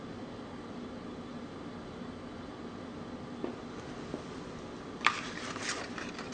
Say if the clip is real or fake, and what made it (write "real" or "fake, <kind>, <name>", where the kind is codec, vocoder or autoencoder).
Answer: real